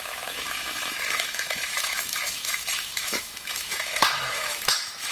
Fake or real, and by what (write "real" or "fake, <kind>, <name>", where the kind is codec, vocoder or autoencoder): fake, autoencoder, DAC-VAE